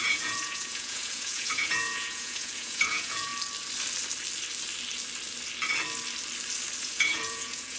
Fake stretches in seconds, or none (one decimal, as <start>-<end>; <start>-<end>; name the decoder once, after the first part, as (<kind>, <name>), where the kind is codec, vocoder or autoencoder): 0.0-3.3 (vocoder, Vocos); 6.8-7.8